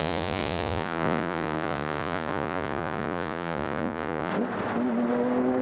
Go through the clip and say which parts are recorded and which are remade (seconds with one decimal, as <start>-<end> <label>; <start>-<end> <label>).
0.0-4.3 remade; 4.3-5.6 recorded